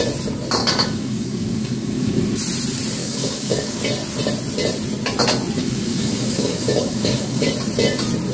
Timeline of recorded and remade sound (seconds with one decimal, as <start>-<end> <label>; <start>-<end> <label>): 0.0-0.6 recorded; 0.6-2.2 remade; 2.2-3.0 recorded; 3.0-3.8 remade; 3.8-5.6 recorded; 5.6-7.5 remade; 7.5-8.3 recorded